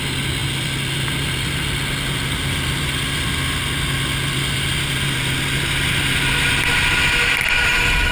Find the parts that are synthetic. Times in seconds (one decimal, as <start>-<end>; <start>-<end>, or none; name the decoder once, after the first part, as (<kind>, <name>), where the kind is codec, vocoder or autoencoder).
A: none